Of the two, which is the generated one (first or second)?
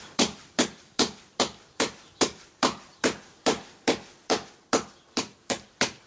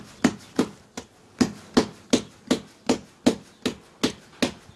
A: first